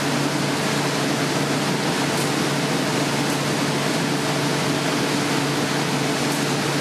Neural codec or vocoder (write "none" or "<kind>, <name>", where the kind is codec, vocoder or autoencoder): none